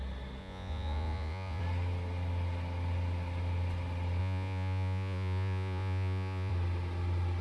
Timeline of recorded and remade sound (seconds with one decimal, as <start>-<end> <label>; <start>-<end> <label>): 0.0-0.4 recorded; 0.4-1.6 remade; 1.6-4.2 recorded; 4.2-6.5 remade; 6.5-7.4 recorded